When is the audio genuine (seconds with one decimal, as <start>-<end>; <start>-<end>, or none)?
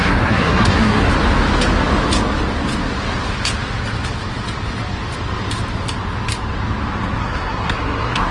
1.1-7.2